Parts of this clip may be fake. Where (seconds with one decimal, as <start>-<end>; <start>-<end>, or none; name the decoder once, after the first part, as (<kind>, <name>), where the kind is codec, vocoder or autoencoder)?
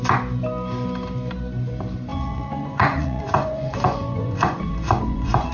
2.1-5.5 (vocoder, Vocos)